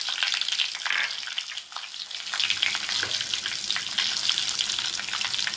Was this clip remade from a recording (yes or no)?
no